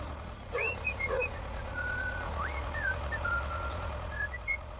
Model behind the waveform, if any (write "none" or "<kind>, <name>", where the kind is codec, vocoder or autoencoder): vocoder, Vocos